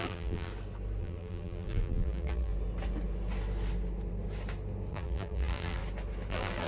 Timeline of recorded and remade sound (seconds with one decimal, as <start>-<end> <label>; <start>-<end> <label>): 0.0-0.5 remade; 0.5-1.0 recorded; 1.0-2.5 remade; 2.5-4.9 recorded; 4.9-5.8 remade; 5.8-6.3 recorded; 6.3-6.7 remade